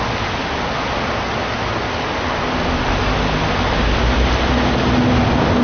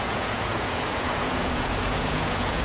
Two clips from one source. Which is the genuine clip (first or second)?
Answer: first